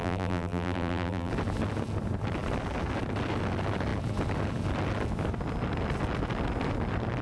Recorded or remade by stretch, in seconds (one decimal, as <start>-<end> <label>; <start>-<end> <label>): 0.0-1.3 remade; 1.3-7.2 recorded